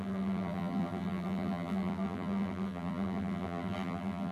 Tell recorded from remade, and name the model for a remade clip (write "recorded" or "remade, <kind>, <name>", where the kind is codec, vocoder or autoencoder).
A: remade, vocoder, BigVGAN v2